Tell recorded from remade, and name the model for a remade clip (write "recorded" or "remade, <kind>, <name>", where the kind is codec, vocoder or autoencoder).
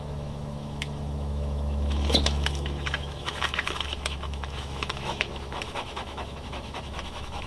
remade, autoencoder, DAC-VAE